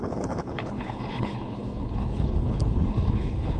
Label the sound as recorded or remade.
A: remade